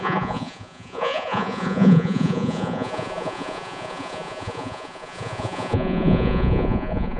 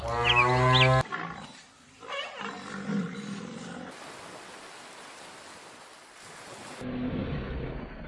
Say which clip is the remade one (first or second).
first